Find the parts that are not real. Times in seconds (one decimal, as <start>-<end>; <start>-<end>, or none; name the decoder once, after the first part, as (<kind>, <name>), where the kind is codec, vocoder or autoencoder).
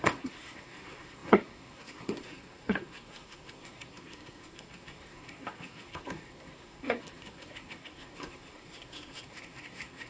0.0-10.1 (codec, SNAC)